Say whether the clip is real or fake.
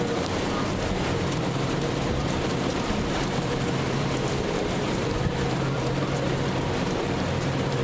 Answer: fake